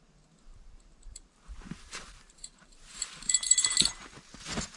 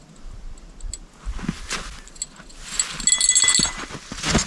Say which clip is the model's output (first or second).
first